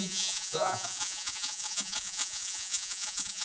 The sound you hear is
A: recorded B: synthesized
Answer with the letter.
B